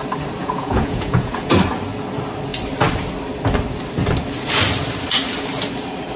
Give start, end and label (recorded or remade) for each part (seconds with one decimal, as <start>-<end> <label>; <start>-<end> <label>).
0.0-0.4 recorded; 0.4-1.5 remade; 1.5-6.2 recorded